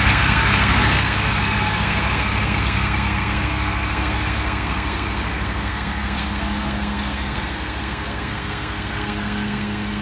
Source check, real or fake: fake